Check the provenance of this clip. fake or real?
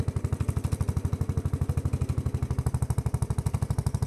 real